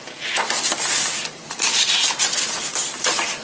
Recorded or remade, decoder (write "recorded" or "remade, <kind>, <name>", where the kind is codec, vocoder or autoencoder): recorded